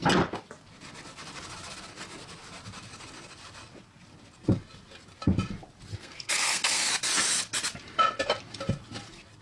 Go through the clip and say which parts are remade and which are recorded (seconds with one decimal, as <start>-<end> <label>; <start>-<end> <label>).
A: 0.0-5.9 recorded; 5.9-6.9 remade; 6.9-9.4 recorded